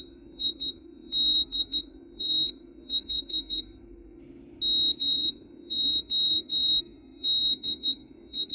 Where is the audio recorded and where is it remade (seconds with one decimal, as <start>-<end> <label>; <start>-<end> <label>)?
0.0-4.2 remade; 4.2-5.0 recorded; 5.0-8.5 remade